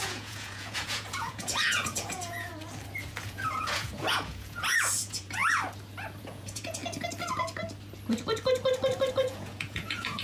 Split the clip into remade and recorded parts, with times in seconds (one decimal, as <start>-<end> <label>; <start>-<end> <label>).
0.0-2.5 remade; 2.5-3.2 recorded; 3.2-5.4 remade; 5.4-6.2 recorded; 6.2-6.8 remade; 6.8-9.1 recorded; 9.1-10.2 remade